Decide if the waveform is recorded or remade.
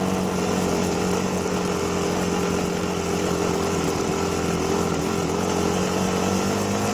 recorded